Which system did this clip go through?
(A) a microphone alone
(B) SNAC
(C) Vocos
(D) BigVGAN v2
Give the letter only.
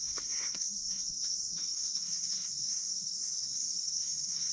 B